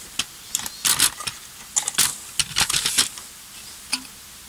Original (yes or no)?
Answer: yes